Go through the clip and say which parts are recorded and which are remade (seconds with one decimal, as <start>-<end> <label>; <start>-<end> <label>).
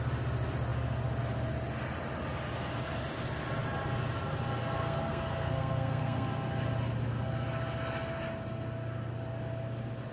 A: 0.0-4.8 recorded; 4.8-6.5 remade; 6.5-10.1 recorded